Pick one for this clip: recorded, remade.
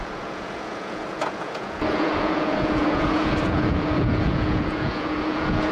remade